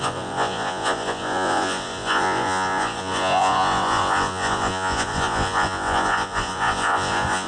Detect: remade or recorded remade